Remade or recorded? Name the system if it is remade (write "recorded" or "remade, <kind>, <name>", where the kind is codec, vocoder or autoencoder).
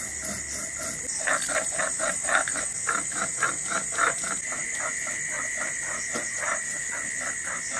recorded